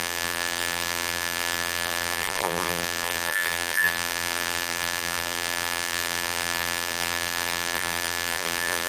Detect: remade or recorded remade